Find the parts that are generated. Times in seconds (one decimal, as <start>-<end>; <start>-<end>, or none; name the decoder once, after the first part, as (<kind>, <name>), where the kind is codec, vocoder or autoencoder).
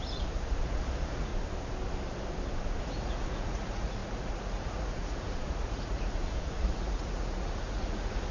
0.0-1.3 (vocoder, Vocos); 2.8-8.3